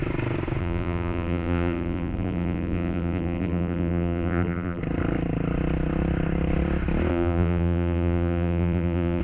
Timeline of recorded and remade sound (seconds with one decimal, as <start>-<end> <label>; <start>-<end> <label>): 0.0-0.6 recorded; 0.6-4.8 remade; 4.8-7.1 recorded; 7.1-9.2 remade